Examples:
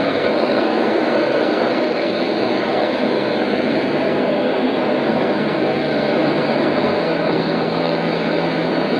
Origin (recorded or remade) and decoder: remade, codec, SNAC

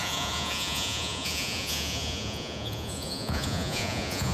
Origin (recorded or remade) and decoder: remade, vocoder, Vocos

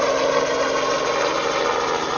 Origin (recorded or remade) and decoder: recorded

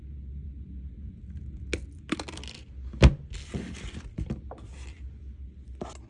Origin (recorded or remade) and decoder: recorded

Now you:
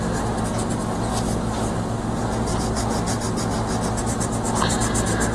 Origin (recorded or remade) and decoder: recorded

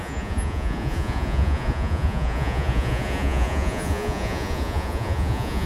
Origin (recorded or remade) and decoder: remade, vocoder, Vocos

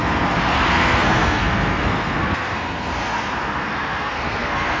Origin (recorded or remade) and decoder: remade, codec, SNAC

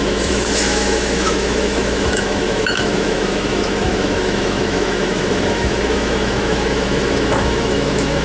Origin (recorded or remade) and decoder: remade, autoencoder, DAC-VAE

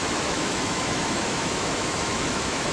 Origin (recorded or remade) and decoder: remade, autoencoder, DAC-VAE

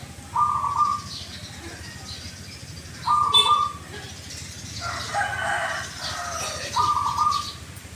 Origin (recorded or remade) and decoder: recorded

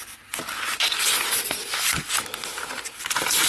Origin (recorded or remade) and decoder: recorded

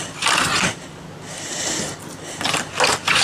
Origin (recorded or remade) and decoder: recorded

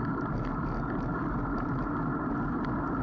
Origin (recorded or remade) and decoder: recorded